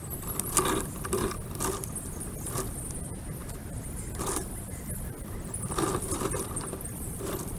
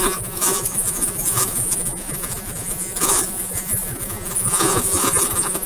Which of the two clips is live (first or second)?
first